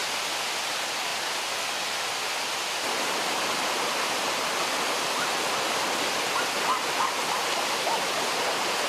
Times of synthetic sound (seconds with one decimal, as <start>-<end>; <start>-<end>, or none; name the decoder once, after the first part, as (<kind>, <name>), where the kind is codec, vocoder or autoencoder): none